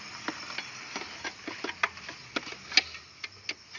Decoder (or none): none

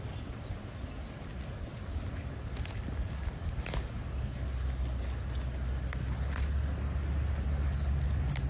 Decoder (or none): none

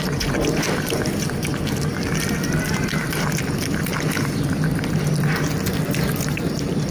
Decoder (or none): vocoder, BigVGAN v2